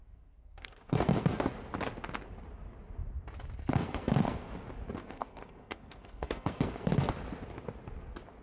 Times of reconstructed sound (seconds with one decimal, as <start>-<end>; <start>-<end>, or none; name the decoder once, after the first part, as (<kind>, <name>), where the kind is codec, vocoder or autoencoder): 0.0-1.5 (codec, SNAC); 3.6-4.5; 5.0-7.1